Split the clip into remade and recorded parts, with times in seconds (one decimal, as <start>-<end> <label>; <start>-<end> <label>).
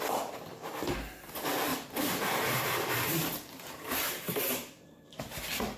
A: 0.0-1.7 recorded; 1.7-5.2 remade; 5.2-5.8 recorded